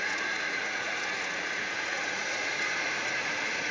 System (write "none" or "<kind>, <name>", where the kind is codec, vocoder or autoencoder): vocoder, Vocos